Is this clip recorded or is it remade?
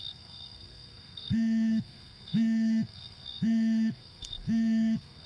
remade